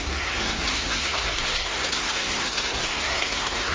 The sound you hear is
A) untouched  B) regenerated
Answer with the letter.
B